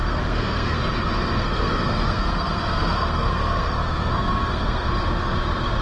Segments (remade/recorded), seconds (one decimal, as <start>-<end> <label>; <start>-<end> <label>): 0.0-0.8 remade; 0.8-1.4 recorded; 1.4-4.9 remade; 4.9-5.8 recorded